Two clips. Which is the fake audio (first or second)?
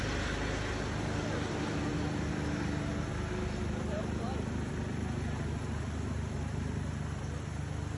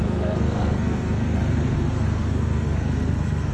second